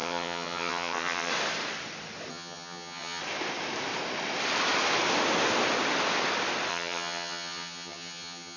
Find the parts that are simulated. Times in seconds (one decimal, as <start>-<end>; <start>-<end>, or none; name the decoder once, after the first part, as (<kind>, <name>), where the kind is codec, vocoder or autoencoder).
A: 0.0-1.3 (vocoder, HiFi-GAN); 2.3-3.2; 6.7-8.6